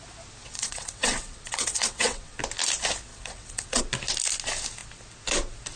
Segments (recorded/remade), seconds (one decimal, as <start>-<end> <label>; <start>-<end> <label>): 0.0-0.4 recorded; 0.4-2.4 remade; 2.4-3.1 recorded; 3.1-3.8 remade; 3.8-5.8 recorded